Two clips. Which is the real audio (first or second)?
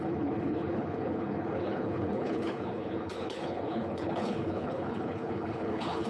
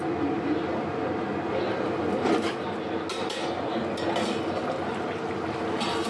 second